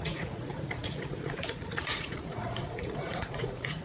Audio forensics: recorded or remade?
remade